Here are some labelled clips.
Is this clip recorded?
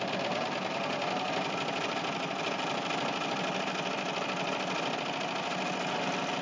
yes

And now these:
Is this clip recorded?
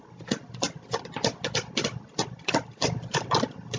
yes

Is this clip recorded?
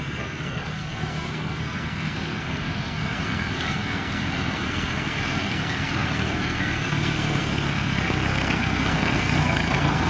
no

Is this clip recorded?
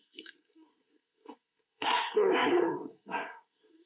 no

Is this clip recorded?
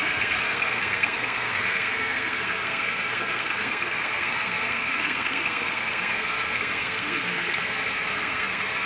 no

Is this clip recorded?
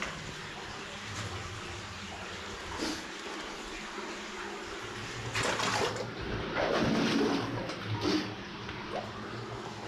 yes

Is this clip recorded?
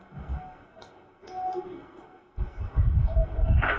no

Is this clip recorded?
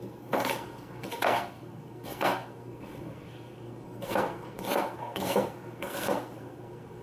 no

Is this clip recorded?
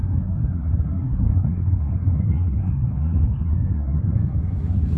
no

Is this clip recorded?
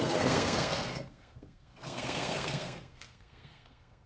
no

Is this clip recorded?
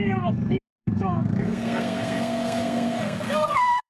no